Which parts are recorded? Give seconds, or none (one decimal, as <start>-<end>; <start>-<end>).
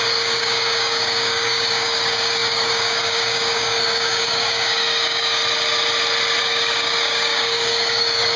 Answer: 5.4-6.4